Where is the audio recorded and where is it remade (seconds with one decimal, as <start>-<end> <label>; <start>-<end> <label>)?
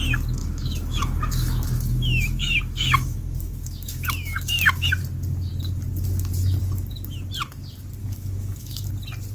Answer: 0.0-0.4 recorded; 0.4-4.9 remade; 4.9-8.0 recorded; 8.0-8.9 remade; 8.9-9.3 recorded